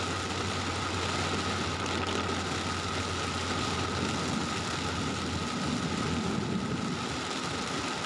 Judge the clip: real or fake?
real